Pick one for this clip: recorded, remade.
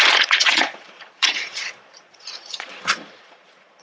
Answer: remade